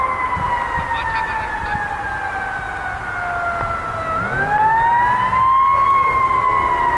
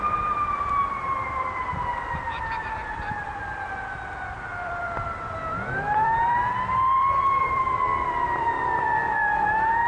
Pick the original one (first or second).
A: first